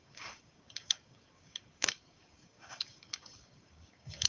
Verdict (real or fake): fake